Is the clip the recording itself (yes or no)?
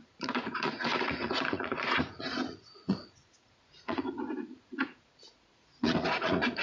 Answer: no